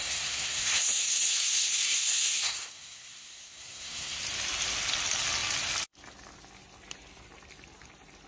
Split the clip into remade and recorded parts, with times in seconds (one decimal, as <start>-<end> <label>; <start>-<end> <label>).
0.0-4.2 remade; 4.2-8.3 recorded